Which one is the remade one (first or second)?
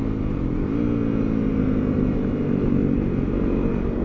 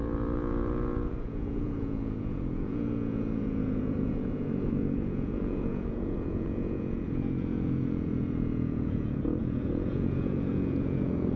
second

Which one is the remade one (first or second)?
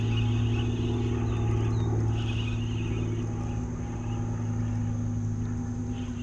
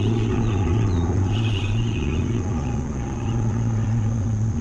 second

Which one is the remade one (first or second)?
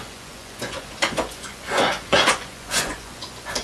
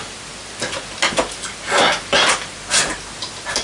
first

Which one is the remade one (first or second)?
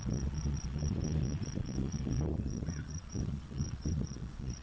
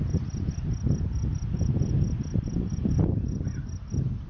first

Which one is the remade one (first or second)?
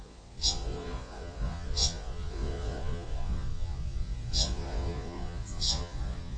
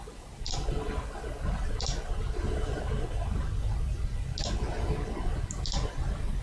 first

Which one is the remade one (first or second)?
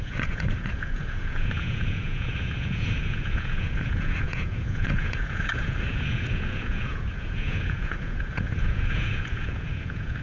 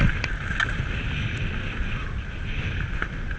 first